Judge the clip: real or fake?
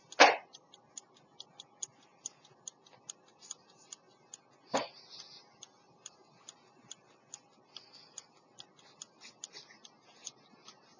real